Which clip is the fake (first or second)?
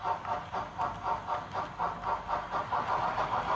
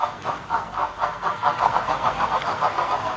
second